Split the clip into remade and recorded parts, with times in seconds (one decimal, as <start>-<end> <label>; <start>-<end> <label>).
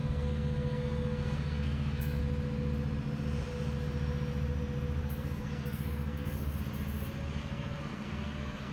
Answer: 0.0-2.2 remade; 2.2-5.0 recorded; 5.0-6.6 remade; 6.6-7.4 recorded; 7.4-8.7 remade